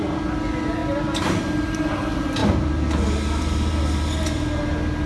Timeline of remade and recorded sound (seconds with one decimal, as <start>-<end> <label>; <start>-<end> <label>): 0.0-5.1 recorded